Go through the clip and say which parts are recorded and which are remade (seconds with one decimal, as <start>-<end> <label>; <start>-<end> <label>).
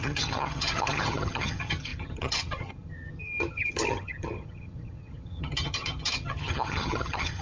0.0-7.4 remade